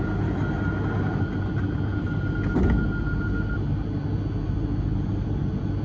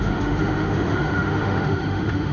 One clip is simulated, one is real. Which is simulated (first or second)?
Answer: second